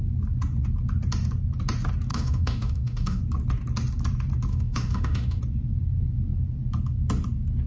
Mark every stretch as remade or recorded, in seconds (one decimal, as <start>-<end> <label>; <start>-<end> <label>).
0.0-2.1 recorded; 2.1-3.2 remade; 3.2-4.5 recorded; 4.5-5.4 remade; 5.4-7.7 recorded